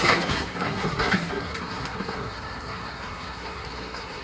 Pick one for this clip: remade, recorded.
remade